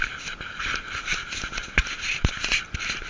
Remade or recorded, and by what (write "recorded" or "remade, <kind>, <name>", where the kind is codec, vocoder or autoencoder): recorded